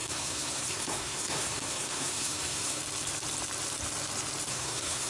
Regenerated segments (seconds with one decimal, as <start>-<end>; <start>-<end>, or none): 0.0-2.8; 4.5-5.1